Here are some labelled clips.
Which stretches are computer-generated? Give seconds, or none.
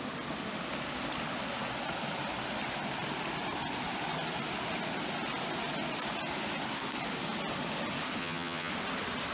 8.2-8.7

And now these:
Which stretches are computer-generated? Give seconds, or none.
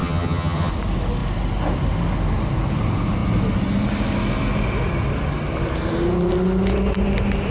0.0-0.7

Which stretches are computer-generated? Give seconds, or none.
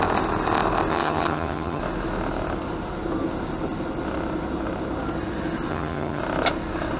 0.9-1.8; 5.7-6.2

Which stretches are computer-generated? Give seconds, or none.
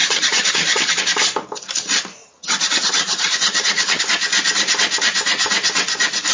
0.0-1.0; 2.2-4.0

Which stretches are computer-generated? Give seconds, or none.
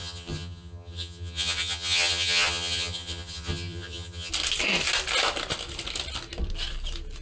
0.0-4.3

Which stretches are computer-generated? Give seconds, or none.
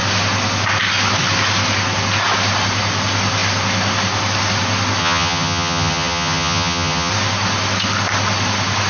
5.0-7.1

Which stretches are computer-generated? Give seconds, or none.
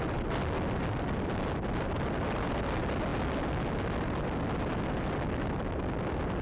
none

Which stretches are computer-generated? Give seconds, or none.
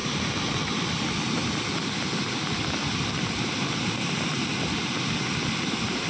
none